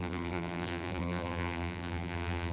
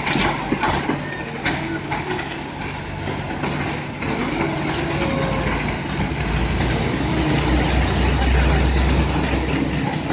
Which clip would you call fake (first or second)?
first